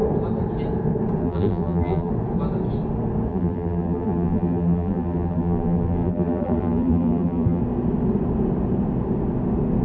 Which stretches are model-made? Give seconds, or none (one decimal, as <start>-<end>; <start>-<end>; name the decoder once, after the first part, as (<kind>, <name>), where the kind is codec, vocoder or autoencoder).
1.2-2.1 (vocoder, BigVGAN v2); 3.3-7.6